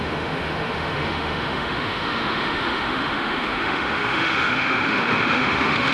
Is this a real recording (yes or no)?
no